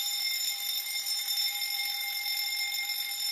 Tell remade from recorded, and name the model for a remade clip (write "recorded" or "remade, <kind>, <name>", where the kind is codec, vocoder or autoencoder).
recorded